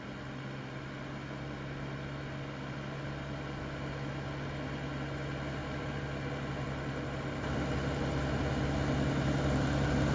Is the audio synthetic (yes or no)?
no